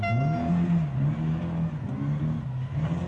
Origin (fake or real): real